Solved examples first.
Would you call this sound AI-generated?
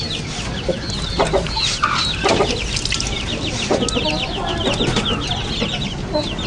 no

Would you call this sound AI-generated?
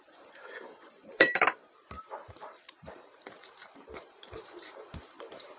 yes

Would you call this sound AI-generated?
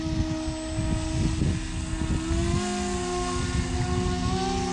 no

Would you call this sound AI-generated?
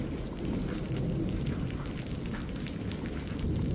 yes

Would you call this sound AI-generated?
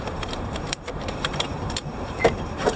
yes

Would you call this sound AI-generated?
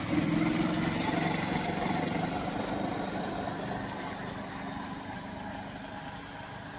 no